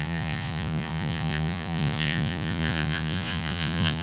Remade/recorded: remade